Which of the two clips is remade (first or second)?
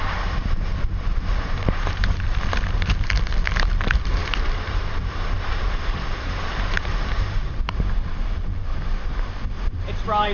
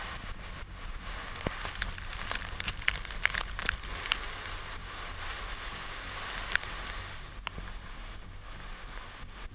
first